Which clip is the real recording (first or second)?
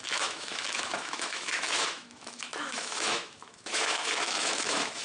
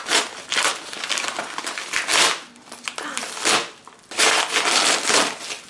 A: second